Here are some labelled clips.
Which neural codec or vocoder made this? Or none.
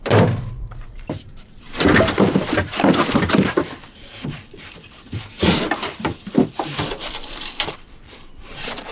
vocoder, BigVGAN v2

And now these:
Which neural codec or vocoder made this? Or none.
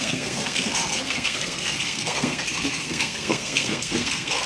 codec, SNAC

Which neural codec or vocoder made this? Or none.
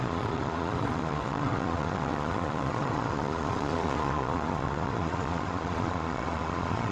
vocoder, Vocos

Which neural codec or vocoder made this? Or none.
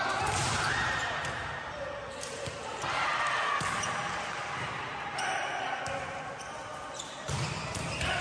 none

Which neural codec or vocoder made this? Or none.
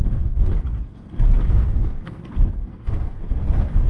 codec, SNAC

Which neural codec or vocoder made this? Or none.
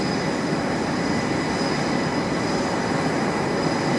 none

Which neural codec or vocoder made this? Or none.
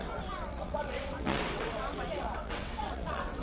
vocoder, WaveNeXt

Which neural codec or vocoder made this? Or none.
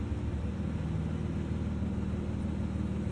none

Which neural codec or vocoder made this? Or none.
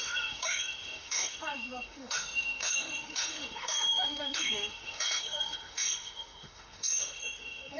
autoencoder, DAC-VAE